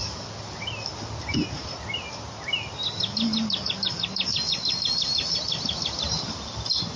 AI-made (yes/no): no